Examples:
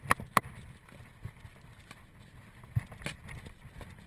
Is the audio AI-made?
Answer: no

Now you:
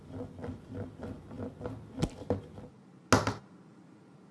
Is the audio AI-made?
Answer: no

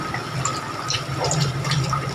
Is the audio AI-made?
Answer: yes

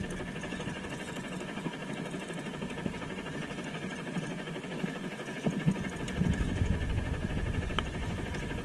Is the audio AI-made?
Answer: yes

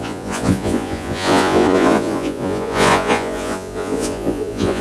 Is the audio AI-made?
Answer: yes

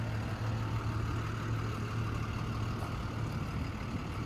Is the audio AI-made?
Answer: no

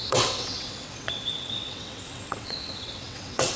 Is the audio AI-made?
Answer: yes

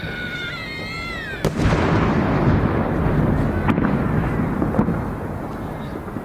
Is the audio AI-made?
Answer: no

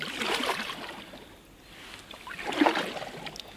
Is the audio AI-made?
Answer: no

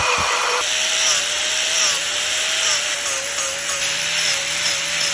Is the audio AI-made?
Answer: yes